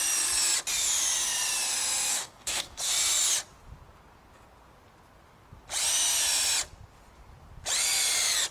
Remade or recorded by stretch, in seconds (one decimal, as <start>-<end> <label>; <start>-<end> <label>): 0.0-2.1 recorded; 2.1-2.9 remade; 2.9-8.5 recorded